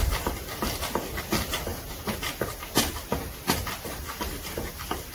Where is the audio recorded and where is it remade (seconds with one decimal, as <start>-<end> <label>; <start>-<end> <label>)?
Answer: 0.0-5.1 recorded